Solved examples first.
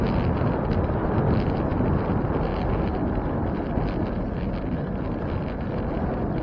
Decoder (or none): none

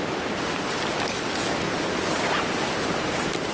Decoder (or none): vocoder, BigVGAN v2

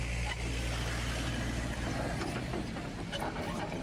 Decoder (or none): none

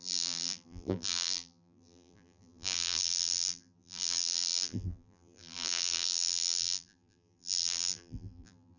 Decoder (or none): vocoder, BigVGAN v2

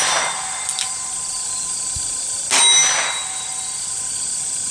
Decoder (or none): none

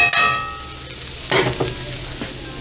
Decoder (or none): none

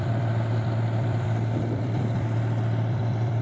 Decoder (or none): vocoder, BigVGAN v2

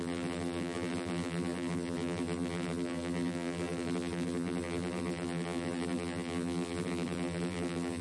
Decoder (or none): vocoder, BigVGAN v2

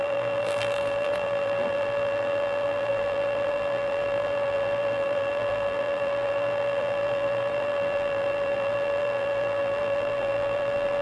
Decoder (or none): vocoder, BigVGAN v2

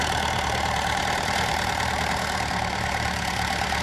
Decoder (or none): vocoder, BigVGAN v2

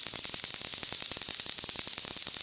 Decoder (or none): none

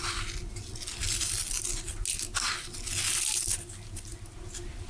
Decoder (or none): none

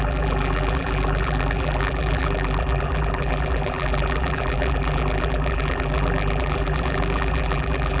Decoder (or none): vocoder, BigVGAN v2